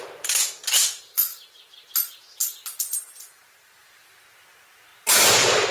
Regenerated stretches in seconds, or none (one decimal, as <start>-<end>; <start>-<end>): none